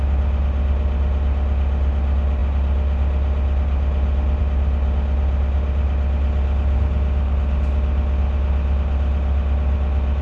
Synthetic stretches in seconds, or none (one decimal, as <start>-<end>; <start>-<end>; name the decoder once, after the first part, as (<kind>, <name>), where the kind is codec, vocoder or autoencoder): none